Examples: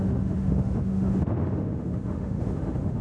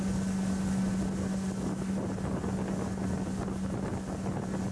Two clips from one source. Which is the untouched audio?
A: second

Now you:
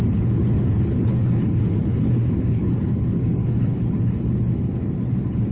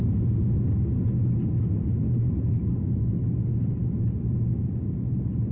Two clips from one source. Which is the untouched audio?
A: second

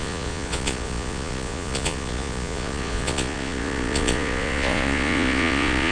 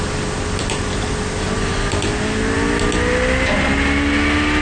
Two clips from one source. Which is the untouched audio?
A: second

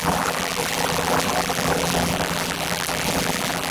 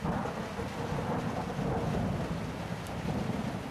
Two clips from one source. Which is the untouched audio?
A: second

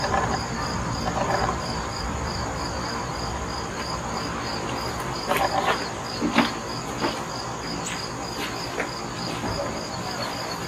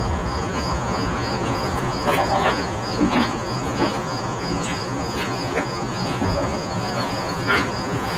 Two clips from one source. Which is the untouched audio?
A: first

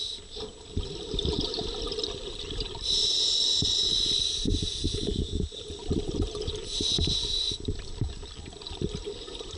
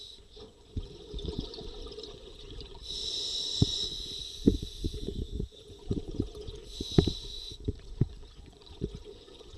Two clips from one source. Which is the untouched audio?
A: first